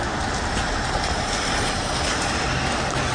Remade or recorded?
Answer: recorded